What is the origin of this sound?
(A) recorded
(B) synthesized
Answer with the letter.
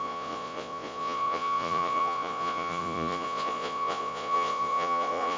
B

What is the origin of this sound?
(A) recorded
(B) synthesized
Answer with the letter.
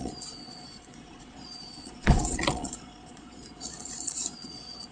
B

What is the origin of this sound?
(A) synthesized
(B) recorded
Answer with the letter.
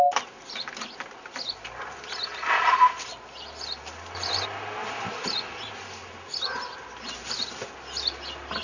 B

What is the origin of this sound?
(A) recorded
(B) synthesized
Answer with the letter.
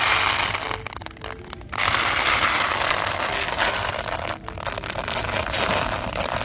A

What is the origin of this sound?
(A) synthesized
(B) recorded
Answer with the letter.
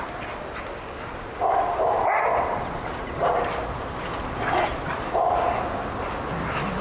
B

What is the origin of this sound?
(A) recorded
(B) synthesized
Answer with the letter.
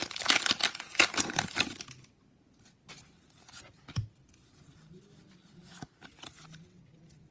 A